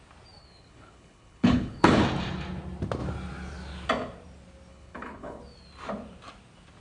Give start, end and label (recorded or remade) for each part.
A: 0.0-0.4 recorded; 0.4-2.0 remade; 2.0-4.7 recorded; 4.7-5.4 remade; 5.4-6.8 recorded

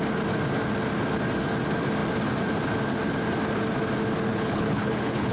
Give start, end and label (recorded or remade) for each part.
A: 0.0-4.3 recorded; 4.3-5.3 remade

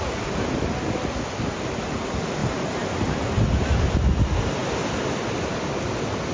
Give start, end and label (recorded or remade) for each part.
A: 0.0-6.3 recorded

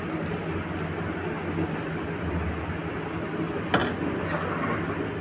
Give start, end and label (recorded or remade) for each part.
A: 0.0-5.2 recorded

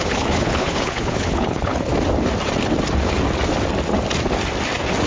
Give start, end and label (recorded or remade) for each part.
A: 0.0-1.9 remade; 1.9-5.1 recorded